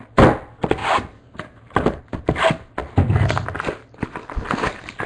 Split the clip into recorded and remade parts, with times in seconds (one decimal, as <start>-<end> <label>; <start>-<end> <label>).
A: 0.0-0.8 recorded; 0.8-2.0 remade; 2.0-5.1 recorded